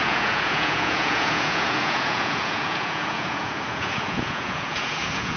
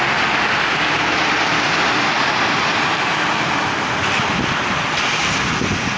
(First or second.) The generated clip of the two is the first